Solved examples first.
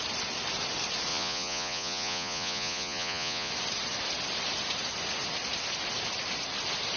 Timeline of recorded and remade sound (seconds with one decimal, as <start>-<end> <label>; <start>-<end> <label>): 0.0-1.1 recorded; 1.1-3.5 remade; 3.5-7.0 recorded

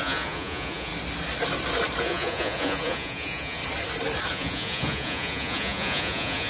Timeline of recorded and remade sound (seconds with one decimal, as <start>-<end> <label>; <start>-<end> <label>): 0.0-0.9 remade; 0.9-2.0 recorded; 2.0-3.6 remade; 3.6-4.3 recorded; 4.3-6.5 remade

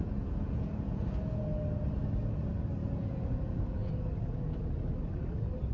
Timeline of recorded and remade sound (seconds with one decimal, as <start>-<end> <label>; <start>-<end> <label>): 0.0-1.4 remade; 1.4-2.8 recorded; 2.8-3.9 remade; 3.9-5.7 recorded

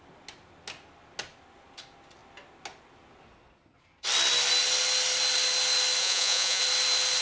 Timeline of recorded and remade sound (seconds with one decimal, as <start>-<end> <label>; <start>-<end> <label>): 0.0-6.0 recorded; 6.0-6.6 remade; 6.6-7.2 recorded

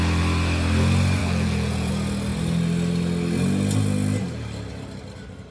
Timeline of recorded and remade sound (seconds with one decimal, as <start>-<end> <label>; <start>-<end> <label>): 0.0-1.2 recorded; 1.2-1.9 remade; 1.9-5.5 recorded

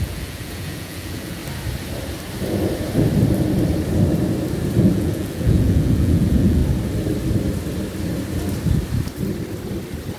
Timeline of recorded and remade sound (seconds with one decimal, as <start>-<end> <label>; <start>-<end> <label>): 0.0-1.4 remade; 1.4-4.8 recorded; 4.8-6.6 remade; 6.6-10.2 recorded

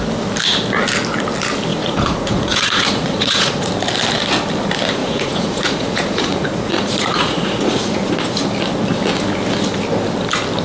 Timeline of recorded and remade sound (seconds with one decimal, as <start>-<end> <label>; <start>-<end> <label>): 0.0-1.7 recorded; 1.7-3.7 remade; 3.7-5.0 recorded; 5.0-8.1 remade; 8.1-10.6 recorded

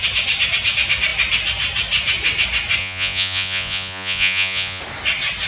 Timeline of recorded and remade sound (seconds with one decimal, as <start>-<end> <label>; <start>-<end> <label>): 0.0-2.8 recorded; 2.8-4.8 remade; 4.8-5.5 recorded